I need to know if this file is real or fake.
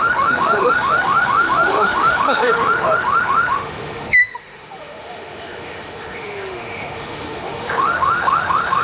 fake